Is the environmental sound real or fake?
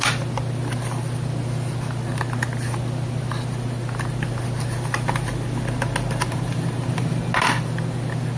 real